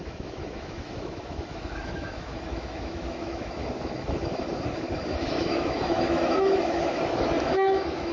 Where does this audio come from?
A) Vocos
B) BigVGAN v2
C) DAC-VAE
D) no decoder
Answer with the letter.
C